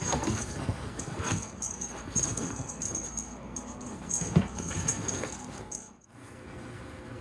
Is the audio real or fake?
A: fake